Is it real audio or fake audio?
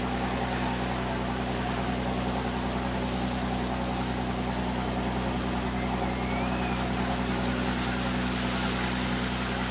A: real